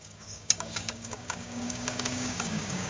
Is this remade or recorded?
remade